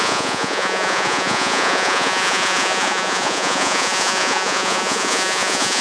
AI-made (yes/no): yes